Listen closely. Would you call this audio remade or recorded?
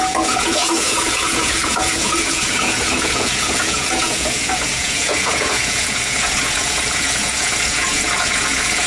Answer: remade